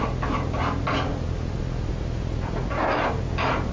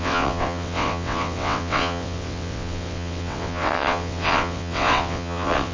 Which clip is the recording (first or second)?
first